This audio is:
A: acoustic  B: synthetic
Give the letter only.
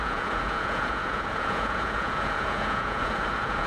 B